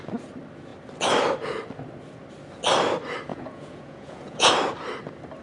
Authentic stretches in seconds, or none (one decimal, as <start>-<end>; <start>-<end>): 0.0-3.3; 4.5-5.4

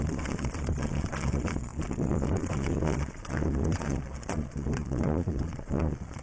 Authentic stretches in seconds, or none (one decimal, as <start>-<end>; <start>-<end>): none

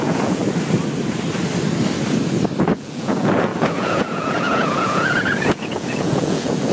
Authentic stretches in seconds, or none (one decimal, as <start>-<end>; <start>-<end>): 0.4-2.7

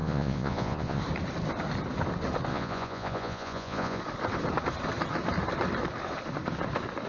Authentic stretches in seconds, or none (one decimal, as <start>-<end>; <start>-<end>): 1.0-2.5; 4.0-7.1

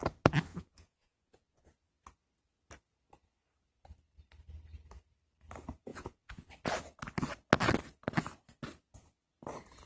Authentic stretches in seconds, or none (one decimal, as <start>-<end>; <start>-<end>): 0.0-0.5; 1.7-5.9; 6.5-9.9

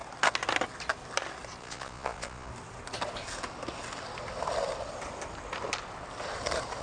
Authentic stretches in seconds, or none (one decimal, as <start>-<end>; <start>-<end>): 0.0-1.6; 2.5-6.8